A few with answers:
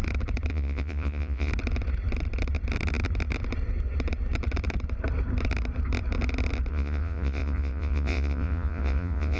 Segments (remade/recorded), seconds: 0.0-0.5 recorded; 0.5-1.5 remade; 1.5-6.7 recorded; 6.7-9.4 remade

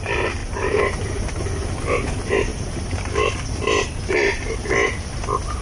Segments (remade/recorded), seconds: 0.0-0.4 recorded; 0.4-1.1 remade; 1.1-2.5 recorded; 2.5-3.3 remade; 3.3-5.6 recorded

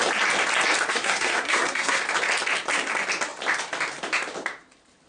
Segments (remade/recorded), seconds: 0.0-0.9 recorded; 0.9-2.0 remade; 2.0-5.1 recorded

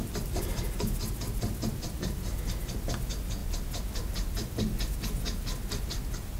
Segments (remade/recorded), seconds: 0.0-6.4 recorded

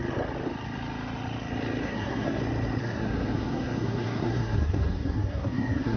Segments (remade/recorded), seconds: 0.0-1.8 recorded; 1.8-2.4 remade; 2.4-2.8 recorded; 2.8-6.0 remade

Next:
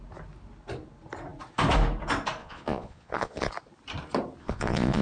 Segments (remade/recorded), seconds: 0.0-2.4 recorded; 2.4-3.5 remade; 3.5-4.4 recorded; 4.4-5.0 remade

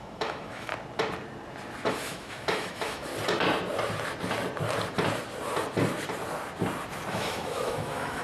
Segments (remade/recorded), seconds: 0.0-0.7 remade; 0.7-1.9 recorded; 1.9-3.1 remade; 3.1-7.1 recorded; 7.1-8.2 remade

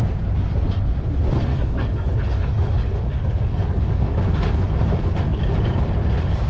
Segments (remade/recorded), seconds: 0.0-1.5 recorded; 1.5-5.4 remade; 5.4-6.5 recorded